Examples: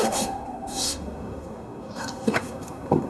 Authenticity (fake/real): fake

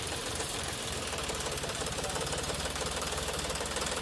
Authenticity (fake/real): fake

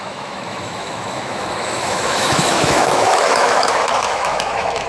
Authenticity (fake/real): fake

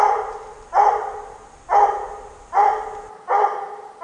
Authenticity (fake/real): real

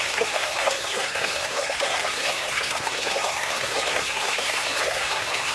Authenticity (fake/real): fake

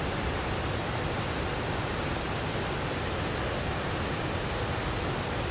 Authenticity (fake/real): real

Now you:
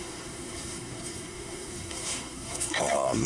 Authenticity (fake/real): fake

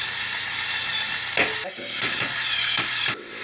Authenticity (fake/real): real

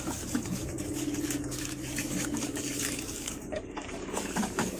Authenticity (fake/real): fake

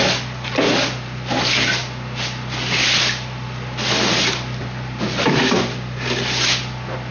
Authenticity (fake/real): real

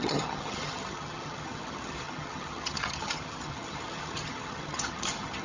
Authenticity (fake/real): fake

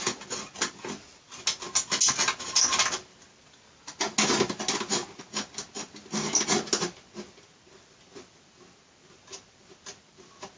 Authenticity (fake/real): real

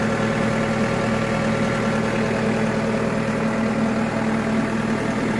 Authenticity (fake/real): real